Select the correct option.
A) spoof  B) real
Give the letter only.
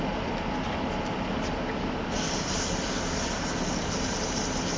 B